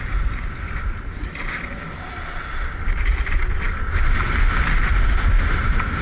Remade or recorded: recorded